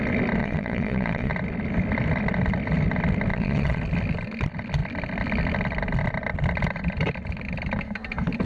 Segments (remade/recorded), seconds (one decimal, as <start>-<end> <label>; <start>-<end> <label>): 0.0-0.4 recorded; 0.4-1.3 remade; 1.3-3.3 recorded; 3.3-3.8 remade; 3.8-8.5 recorded